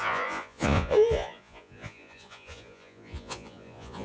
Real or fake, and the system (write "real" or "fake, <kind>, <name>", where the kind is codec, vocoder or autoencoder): fake, vocoder, Vocos